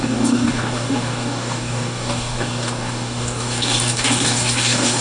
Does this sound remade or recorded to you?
remade